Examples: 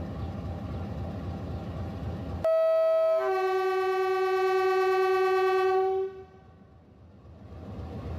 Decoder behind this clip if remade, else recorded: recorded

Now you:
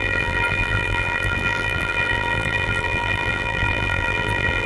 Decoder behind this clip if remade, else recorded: remade, vocoder, BigVGAN v2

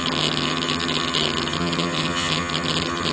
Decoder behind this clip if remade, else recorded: remade, vocoder, HiFi-GAN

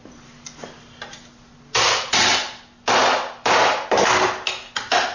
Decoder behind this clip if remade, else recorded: recorded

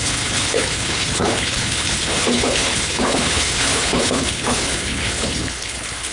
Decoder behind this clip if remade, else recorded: remade, codec, HILCodec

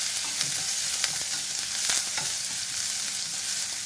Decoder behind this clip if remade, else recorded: recorded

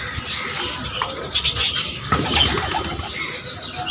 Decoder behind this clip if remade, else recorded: recorded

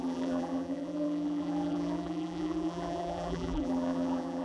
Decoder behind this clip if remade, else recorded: remade, vocoder, BigVGAN v2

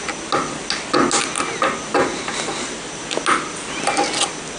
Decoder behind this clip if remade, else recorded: recorded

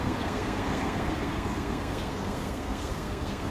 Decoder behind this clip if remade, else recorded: remade, codec, SNAC